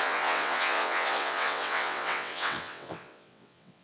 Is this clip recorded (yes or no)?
no